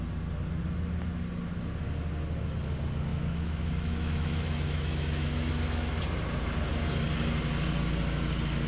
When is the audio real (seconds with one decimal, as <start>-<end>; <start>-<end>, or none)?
0.0-3.1; 6.0-8.7

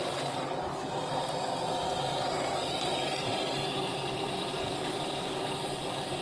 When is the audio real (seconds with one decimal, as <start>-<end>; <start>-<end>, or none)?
0.0-4.6; 5.5-6.2

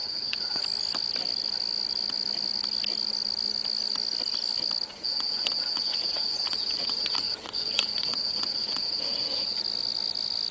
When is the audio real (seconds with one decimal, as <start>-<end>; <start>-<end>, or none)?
0.6-4.9; 9.6-10.5

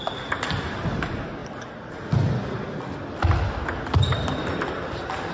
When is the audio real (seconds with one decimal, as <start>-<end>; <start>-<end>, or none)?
0.0-5.3

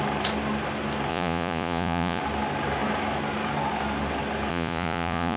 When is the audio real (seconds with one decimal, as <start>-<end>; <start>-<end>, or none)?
0.0-1.1; 2.2-4.5

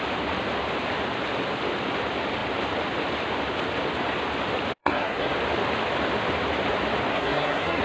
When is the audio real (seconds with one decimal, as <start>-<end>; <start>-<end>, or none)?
0.0-4.8; 5.3-7.1

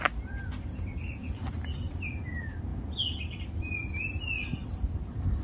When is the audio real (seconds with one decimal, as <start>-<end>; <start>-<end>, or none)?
0.0-5.4